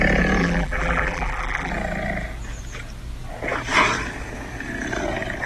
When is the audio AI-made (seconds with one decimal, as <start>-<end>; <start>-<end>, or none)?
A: 0.4-1.7